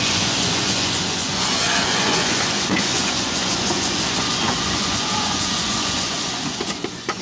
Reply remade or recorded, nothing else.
remade